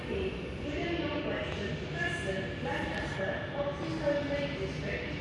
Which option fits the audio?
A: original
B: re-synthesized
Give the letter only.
A